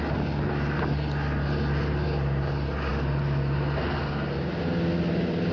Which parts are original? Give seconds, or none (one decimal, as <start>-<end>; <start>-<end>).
0.0-5.5

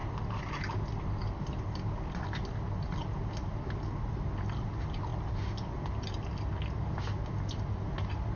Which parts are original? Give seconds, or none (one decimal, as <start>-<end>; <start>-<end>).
0.0-8.4

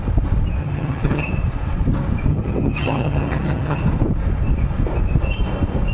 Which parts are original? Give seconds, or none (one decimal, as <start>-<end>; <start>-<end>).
0.0-0.6; 1.3-2.3; 3.8-5.9

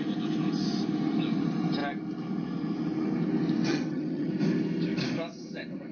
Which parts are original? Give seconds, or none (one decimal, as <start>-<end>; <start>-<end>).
0.0-3.7; 4.3-5.9

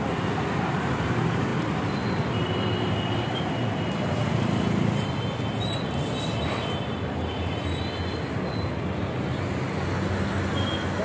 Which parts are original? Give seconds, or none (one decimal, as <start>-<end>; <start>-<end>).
0.0-11.0

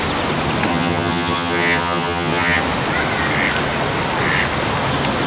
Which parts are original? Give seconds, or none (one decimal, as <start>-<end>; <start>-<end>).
0.0-0.7; 2.6-5.3

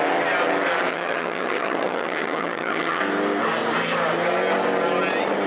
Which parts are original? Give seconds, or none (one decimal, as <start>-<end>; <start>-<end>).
0.0-0.9; 3.0-5.5

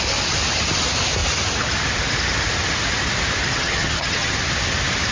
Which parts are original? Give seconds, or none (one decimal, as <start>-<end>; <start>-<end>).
0.0-3.6; 4.3-5.1